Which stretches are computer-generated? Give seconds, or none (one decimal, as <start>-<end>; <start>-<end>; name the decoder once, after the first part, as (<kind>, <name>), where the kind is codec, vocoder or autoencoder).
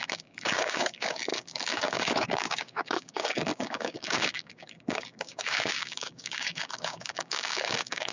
0.0-8.1 (codec, DAC)